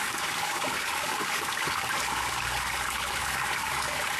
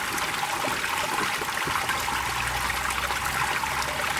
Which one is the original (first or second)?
second